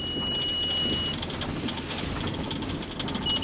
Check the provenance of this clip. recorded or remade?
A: recorded